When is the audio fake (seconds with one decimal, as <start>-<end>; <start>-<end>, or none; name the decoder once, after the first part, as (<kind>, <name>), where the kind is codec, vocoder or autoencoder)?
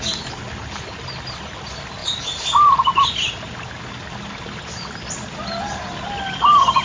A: none